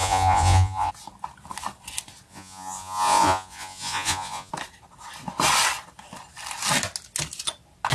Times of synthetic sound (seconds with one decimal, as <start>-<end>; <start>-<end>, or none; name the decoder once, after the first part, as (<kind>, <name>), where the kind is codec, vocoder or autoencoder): 0.0-0.9 (vocoder, Vocos); 2.3-4.5

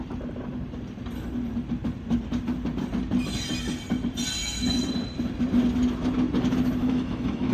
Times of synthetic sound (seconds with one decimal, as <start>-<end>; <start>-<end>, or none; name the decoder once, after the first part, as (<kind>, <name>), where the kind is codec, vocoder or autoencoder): 4.4-4.9 (autoencoder, DAC-VAE); 6.8-7.5